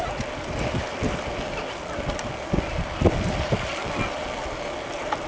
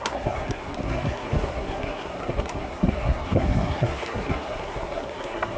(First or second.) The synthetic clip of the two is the second